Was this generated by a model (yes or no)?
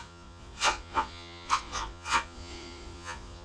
yes